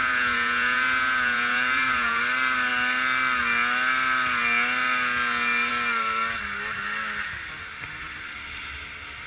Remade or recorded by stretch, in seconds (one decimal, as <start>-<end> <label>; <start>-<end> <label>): 0.0-2.2 remade; 2.2-9.3 recorded